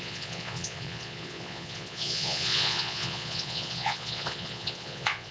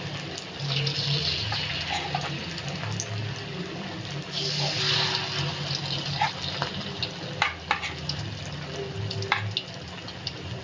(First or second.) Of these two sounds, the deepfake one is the first